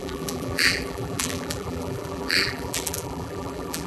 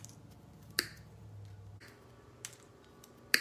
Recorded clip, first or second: second